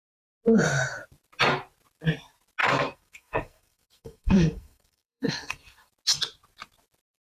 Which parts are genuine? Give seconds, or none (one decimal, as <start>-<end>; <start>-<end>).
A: 0.0-2.6; 5.9-7.3